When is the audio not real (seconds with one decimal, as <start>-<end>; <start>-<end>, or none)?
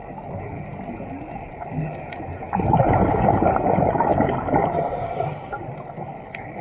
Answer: none